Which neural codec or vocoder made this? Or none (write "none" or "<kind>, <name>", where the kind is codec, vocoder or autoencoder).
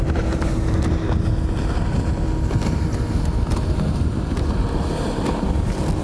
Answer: none